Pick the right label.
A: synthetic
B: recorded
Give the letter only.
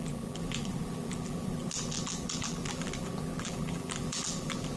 A